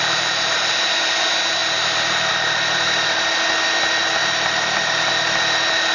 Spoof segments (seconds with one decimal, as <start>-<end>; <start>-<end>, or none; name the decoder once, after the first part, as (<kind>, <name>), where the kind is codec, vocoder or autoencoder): none